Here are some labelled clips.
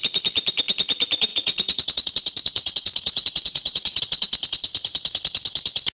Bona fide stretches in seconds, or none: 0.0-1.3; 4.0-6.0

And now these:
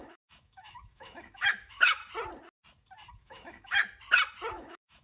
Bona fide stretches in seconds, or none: 2.0-3.1; 3.8-4.5

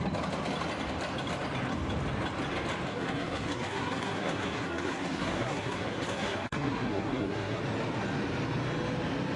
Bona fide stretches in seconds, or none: 0.0-2.9; 7.6-9.4

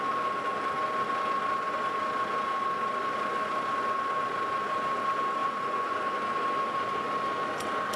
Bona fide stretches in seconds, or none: 0.0-5.4; 6.0-8.0

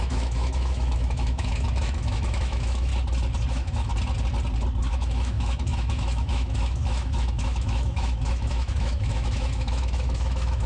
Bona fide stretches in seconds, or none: 2.9-3.5; 3.9-4.9

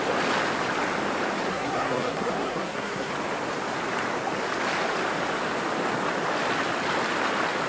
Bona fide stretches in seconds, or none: 0.0-1.5; 3.1-7.7